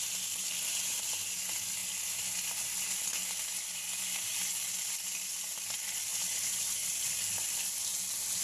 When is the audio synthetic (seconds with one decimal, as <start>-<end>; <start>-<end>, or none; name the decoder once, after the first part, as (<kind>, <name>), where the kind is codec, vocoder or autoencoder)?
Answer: none

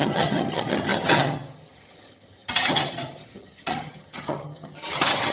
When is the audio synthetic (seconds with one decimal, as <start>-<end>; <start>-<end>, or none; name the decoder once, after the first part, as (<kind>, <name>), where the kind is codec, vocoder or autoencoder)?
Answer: 0.0-5.3 (vocoder, HiFi-GAN)

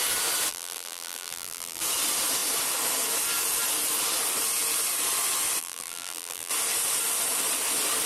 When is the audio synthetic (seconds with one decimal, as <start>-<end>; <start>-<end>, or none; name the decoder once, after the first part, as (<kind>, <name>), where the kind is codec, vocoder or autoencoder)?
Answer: 0.5-1.8 (vocoder, BigVGAN v2); 5.6-6.5

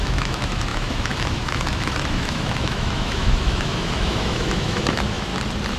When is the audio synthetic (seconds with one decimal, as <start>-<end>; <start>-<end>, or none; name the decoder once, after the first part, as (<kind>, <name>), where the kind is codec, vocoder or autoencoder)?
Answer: 0.0-5.3 (autoencoder, DAC-VAE)

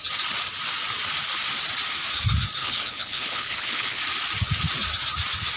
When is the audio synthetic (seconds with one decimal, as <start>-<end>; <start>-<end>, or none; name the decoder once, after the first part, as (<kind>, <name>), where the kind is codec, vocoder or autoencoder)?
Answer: 2.6-4.0 (codec, HILCodec)

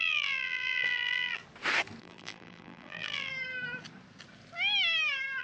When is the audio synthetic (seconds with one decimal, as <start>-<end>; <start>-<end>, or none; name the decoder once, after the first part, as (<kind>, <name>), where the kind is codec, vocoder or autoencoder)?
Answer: 0.0-1.4 (vocoder, BigVGAN v2); 2.0-3.3

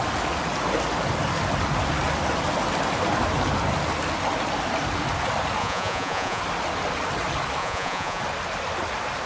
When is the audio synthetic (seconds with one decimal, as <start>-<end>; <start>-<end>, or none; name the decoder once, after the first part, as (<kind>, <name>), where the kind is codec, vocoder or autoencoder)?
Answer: 5.6-6.4 (vocoder, Vocos); 7.6-8.2

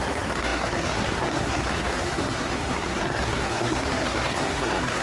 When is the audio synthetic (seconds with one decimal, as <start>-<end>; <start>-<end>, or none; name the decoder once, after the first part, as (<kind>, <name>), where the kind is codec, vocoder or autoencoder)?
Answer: 0.0-5.0 (codec, SNAC)